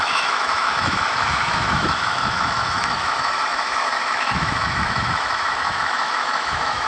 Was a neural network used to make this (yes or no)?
yes